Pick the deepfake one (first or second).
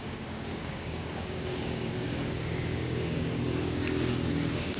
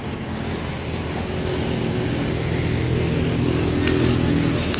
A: first